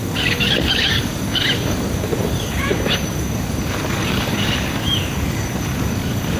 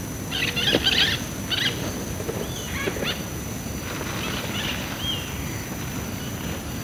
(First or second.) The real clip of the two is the second